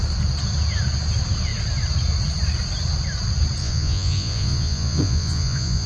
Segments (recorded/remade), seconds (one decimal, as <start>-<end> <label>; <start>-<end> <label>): 0.0-3.6 recorded; 3.6-5.9 remade